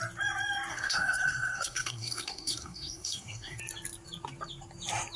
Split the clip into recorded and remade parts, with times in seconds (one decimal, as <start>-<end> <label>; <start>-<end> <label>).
0.0-0.7 recorded; 0.7-3.6 remade; 3.6-5.2 recorded